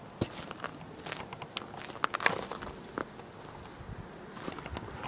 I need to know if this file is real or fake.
real